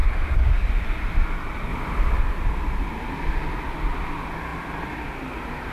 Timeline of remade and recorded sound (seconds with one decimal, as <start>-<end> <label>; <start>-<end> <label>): 0.0-0.7 remade; 0.7-5.7 recorded